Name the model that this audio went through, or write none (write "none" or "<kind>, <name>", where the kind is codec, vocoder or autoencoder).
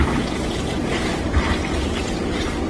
vocoder, BigVGAN v2